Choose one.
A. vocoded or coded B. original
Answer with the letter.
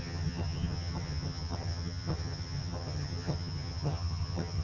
A